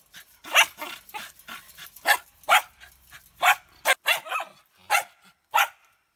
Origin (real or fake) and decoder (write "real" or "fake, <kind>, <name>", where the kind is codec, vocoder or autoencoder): real